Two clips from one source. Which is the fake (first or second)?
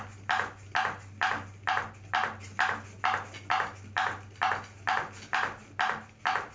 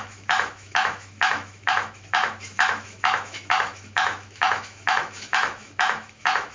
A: second